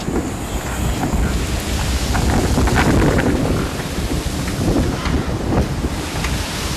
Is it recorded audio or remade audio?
recorded